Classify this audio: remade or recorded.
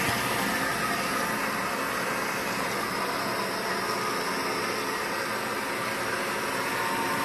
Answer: recorded